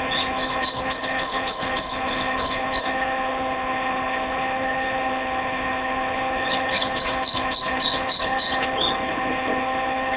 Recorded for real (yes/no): no